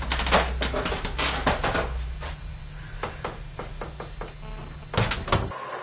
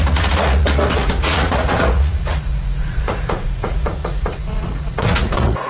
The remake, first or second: second